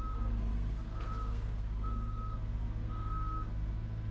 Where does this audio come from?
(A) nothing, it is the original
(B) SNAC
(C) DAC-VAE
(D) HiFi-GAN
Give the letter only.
B